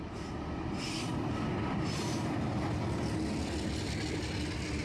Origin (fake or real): real